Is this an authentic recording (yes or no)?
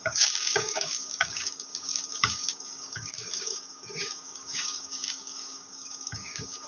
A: no